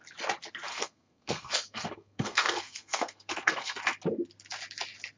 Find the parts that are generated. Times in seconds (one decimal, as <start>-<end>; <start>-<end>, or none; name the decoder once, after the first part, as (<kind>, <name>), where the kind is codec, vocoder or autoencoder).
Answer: 0.7-3.8 (codec, SNAC)